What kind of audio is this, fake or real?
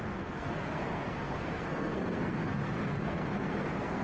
fake